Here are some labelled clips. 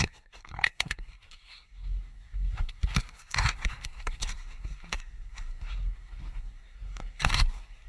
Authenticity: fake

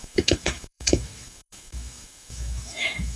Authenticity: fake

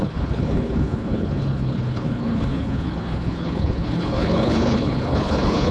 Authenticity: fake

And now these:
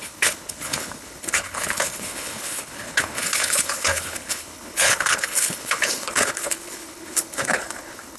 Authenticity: fake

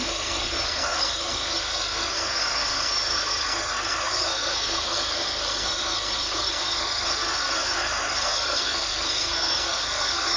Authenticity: fake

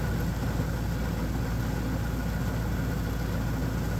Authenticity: real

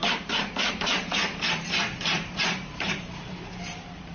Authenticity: fake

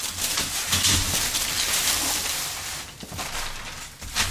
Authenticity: real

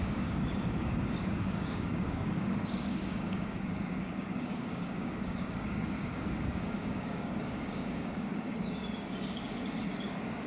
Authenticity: fake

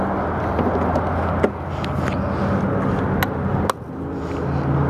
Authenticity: real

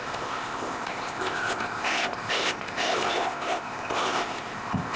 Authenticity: fake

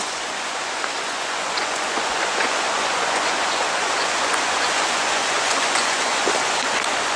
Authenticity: fake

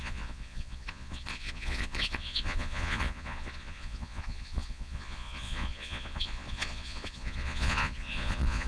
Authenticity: fake